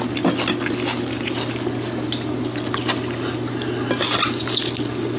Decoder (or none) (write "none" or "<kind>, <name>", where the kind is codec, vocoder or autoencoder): none